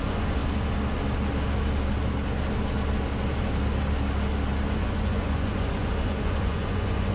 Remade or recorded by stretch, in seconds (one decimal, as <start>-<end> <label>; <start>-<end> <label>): 0.0-0.4 remade; 0.4-4.7 recorded; 4.7-7.1 remade